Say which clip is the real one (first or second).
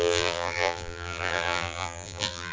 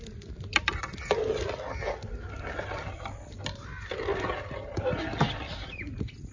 second